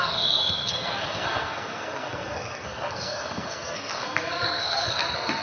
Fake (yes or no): yes